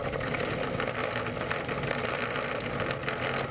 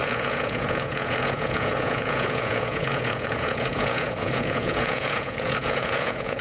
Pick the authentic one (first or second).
first